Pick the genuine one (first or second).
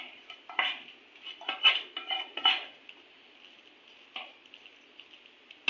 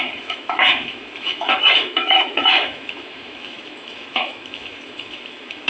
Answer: first